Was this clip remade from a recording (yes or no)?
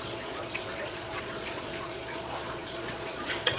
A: yes